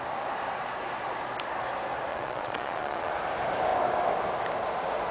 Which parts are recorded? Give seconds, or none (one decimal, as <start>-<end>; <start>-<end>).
0.0-2.1; 3.1-5.1